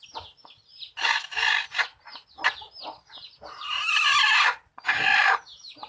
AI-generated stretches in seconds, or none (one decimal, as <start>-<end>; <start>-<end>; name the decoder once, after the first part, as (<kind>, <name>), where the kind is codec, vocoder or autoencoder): none